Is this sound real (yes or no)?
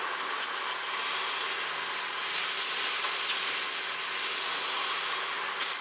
yes